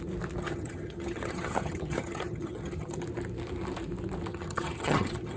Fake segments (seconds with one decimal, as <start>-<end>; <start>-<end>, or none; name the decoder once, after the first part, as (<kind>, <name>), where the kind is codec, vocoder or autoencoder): 0.4-3.0 (vocoder, HiFi-GAN); 4.3-5.4